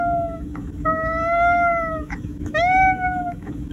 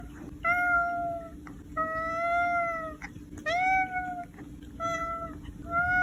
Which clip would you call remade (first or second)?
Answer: first